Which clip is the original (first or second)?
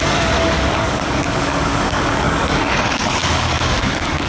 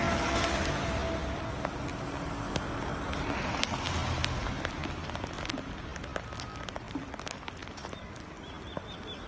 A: second